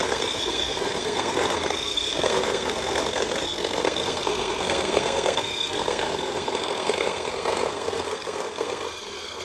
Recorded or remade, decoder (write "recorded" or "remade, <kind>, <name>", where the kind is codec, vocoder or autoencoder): remade, codec, SNAC